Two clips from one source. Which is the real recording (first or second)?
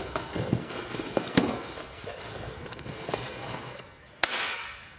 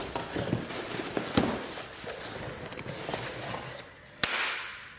second